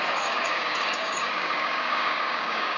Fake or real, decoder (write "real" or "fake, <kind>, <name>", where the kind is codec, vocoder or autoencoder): fake, codec, DAC